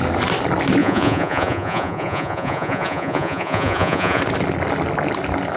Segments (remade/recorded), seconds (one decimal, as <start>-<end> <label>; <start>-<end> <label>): 0.0-0.8 recorded; 0.8-4.2 remade; 4.2-5.6 recorded